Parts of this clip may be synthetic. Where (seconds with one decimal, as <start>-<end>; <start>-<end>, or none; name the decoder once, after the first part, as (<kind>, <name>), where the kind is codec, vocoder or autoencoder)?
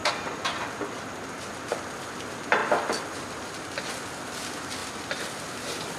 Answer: 0.0-1.2 (vocoder, BigVGAN v2); 2.6-3.9; 4.8-6.0